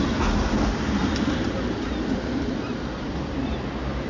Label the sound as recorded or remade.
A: recorded